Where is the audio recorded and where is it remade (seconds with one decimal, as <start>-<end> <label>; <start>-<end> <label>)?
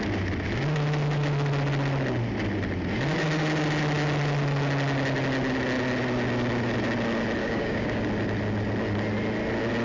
0.0-7.4 recorded; 7.4-8.0 remade; 8.0-9.8 recorded